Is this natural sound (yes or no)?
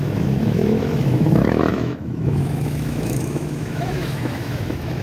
no